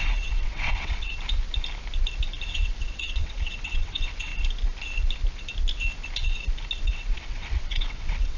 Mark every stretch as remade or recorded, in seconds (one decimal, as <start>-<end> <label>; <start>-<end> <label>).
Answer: 0.0-1.1 remade; 1.1-2.5 recorded; 2.5-4.3 remade; 4.3-6.8 recorded; 6.8-8.4 remade